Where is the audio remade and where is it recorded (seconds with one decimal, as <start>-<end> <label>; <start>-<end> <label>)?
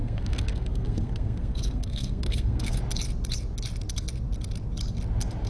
0.0-2.8 remade; 2.8-5.5 recorded